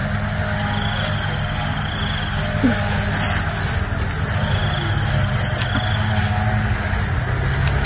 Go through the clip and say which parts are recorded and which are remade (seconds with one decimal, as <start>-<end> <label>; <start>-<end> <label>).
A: 0.0-7.9 recorded